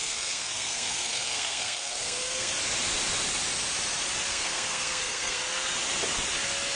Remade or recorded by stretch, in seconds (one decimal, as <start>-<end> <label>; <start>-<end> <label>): 0.0-2.5 remade; 2.5-4.3 recorded; 4.3-5.4 remade; 5.4-6.8 recorded